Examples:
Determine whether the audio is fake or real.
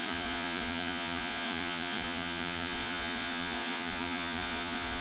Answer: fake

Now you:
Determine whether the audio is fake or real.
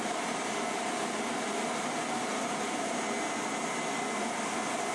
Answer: real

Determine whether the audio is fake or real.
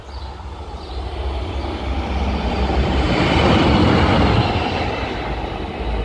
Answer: real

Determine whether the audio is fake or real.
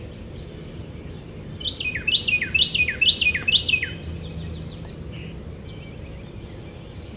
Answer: real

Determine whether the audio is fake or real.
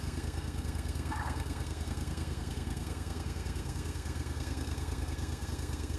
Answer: fake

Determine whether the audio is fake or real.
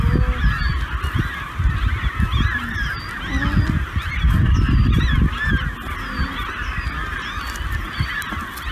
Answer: real